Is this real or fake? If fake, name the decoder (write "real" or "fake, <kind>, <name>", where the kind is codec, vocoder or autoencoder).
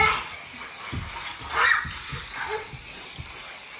real